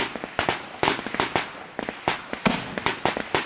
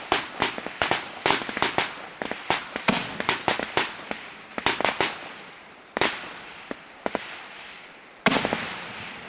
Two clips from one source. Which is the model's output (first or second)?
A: second